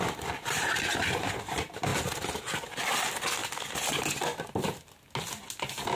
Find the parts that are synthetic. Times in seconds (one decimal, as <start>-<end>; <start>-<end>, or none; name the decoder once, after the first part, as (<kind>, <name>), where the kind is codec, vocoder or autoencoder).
none